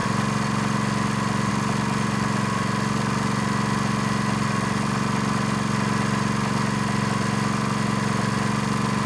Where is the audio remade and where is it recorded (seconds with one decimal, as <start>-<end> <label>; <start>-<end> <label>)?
0.0-9.1 recorded